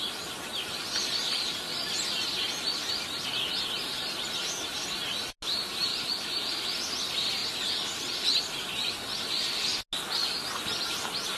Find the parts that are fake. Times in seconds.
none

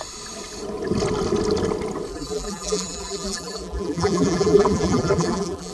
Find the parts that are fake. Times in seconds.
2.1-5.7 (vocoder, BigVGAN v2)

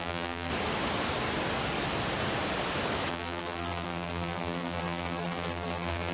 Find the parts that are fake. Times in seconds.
0.0-0.5 (vocoder, BigVGAN v2); 3.1-6.1